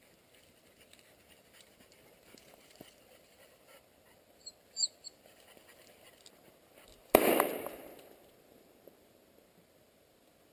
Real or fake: real